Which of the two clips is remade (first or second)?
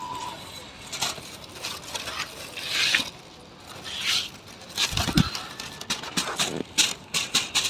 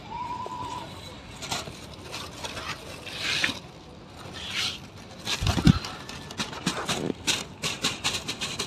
second